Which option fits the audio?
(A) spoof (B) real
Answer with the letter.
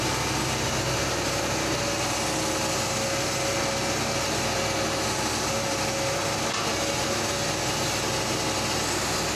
B